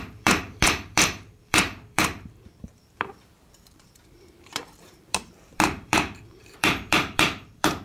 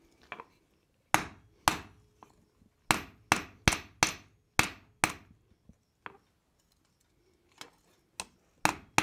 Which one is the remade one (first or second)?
first